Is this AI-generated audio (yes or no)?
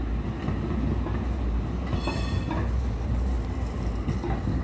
no